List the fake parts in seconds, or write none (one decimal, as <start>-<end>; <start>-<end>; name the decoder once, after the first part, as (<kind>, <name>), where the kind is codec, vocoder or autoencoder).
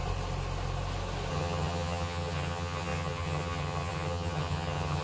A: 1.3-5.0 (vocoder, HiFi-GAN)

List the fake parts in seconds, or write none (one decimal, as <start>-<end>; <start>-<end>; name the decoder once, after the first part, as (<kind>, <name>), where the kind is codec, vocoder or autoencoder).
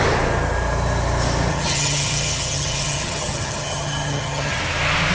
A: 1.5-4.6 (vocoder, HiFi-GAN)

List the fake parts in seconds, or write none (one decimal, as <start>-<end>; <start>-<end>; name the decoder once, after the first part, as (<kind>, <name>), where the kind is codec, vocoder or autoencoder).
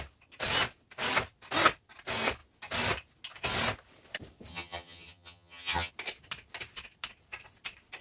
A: 4.5-5.9 (vocoder, HiFi-GAN)